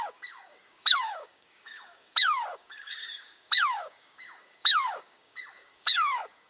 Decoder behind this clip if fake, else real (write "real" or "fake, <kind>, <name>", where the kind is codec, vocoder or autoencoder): fake, codec, DAC